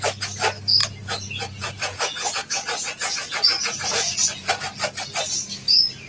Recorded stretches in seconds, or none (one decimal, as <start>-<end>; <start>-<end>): 0.0-0.8; 4.5-6.1